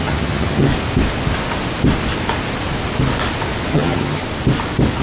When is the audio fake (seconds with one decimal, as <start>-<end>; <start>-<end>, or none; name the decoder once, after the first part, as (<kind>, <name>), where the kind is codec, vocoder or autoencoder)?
0.0-0.7 (vocoder, HiFi-GAN); 3.7-4.2